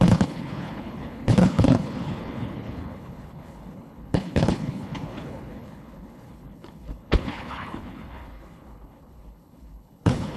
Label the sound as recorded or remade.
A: remade